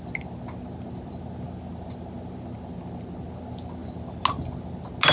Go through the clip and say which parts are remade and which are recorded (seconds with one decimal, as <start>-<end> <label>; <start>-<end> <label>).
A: 0.0-5.1 recorded